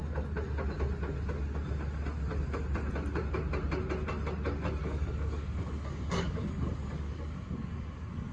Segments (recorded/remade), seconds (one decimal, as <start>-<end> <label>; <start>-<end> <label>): 0.0-4.8 recorded; 4.8-8.3 remade